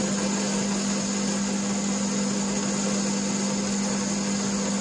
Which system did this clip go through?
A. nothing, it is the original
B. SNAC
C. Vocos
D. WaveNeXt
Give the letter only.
A